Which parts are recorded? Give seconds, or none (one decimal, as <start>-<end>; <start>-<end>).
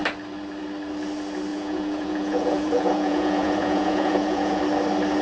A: 0.0-1.5; 4.6-5.2